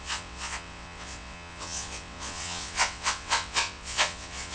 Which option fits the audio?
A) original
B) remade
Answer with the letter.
B